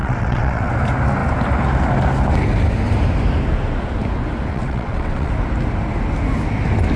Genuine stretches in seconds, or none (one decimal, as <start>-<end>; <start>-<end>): 0.7-4.5; 5.3-7.0